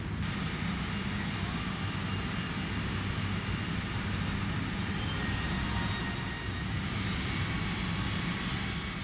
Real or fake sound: real